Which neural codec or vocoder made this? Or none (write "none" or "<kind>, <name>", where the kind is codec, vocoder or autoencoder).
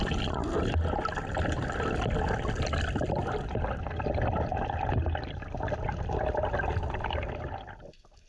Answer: none